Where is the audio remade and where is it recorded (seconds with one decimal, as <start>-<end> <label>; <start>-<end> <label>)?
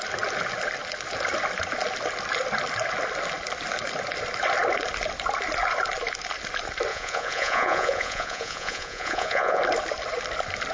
0.0-6.9 recorded; 6.9-9.6 remade; 9.6-10.7 recorded